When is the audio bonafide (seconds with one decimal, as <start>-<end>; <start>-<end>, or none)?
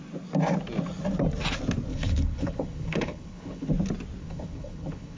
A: 0.0-1.9; 3.7-4.2